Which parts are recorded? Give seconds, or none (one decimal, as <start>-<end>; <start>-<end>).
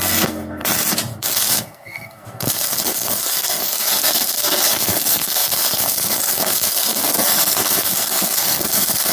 0.6-1.2